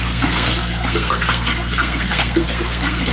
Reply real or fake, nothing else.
fake